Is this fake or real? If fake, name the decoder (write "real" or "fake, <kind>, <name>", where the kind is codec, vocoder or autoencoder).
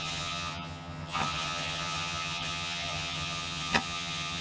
fake, vocoder, HiFi-GAN